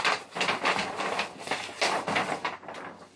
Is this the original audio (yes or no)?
yes